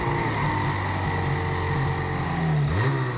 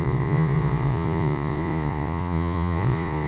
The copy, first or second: second